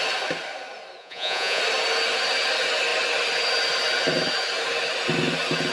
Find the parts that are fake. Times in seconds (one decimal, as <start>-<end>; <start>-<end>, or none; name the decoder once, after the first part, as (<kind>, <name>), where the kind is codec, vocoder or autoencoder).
1.0-1.6 (vocoder, Vocos)